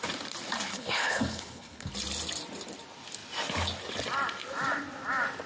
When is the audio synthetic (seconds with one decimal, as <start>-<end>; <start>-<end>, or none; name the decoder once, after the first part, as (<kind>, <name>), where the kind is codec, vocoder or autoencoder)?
0.7-1.9 (codec, HILCodec)